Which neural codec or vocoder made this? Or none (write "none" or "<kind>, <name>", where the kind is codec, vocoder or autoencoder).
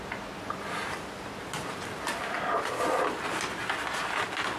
none